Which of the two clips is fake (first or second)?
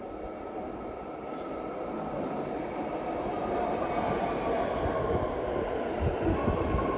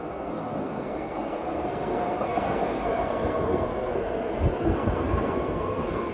second